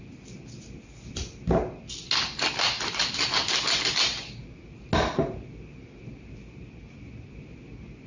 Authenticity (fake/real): real